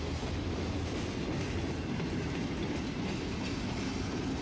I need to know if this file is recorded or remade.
recorded